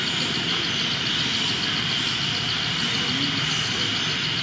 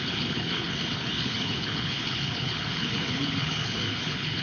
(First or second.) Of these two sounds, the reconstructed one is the second